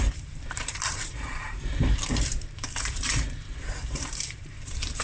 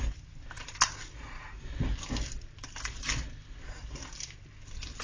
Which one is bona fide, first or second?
second